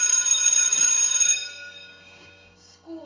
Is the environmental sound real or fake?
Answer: fake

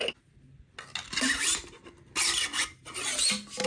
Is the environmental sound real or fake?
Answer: real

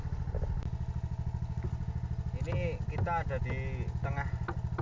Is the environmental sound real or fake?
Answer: real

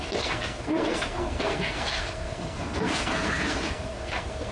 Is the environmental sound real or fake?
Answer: fake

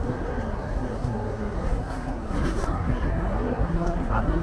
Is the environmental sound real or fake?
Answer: fake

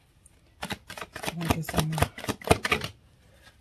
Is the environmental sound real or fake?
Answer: real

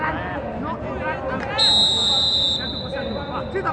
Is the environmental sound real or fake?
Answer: real